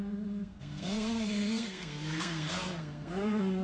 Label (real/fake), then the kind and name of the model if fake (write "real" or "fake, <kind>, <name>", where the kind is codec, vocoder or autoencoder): fake, codec, SNAC